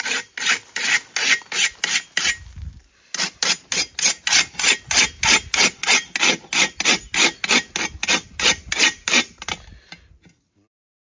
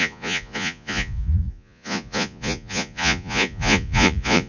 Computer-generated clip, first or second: second